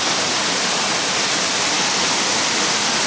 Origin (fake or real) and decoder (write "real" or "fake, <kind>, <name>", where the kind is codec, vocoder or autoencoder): real